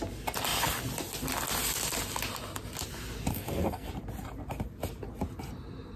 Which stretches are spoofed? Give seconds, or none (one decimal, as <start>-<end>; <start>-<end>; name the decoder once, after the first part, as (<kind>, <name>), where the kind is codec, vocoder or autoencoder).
3.3-3.9 (codec, SNAC)